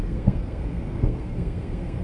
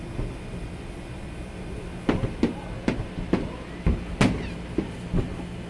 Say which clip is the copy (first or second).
first